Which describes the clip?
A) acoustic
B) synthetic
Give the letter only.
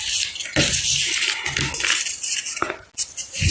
A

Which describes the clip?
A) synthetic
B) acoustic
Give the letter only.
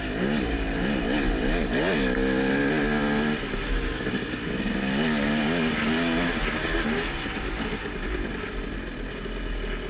B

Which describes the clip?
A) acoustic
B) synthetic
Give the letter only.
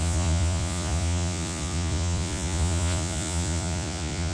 B